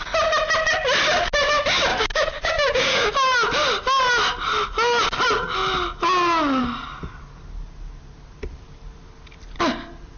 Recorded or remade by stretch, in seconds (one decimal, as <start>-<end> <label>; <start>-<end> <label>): 0.0-1.9 recorded; 1.9-3.1 remade; 3.1-10.2 recorded